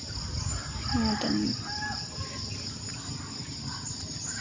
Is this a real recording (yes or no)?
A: yes